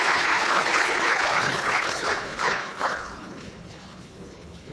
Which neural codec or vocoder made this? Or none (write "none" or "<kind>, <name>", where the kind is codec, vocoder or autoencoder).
codec, HILCodec